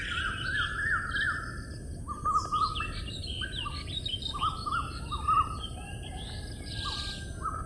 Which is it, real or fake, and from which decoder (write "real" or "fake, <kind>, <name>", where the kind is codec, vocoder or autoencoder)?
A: real